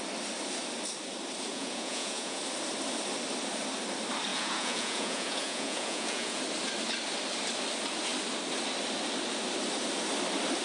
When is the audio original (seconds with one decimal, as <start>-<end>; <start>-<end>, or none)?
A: 0.0-1.5; 2.4-4.3; 6.4-10.6